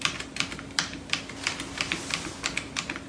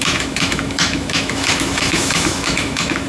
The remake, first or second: second